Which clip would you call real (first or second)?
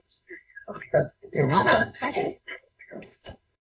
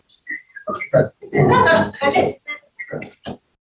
second